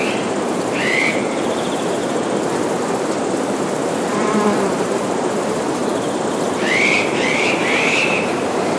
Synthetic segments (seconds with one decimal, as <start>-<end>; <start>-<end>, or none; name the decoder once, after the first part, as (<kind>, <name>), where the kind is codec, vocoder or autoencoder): 0.0-2.0 (vocoder, BigVGAN v2); 3.0-5.8; 6.9-8.8